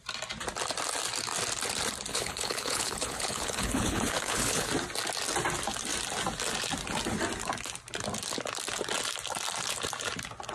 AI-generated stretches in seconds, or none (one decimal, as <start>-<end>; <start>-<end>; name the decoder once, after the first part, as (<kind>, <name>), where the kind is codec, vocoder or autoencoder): 2.1-4.7 (codec, HILCodec)